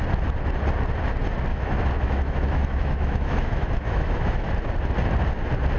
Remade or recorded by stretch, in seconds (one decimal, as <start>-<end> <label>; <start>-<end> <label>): 0.0-1.5 recorded; 1.5-4.5 remade; 4.5-5.8 recorded